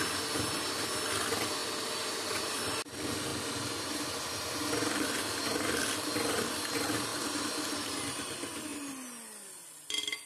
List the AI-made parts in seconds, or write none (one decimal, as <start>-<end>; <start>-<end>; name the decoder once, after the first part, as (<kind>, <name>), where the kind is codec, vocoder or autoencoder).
none